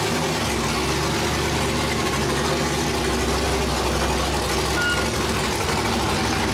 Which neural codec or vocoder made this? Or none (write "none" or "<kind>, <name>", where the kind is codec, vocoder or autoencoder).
none